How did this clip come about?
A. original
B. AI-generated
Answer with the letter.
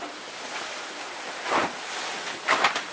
A